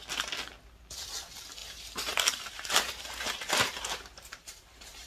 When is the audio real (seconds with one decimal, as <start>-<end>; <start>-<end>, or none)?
0.0-1.6